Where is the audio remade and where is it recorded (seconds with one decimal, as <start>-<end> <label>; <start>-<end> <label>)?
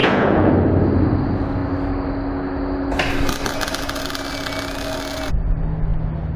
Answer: 0.0-0.5 remade; 0.5-6.4 recorded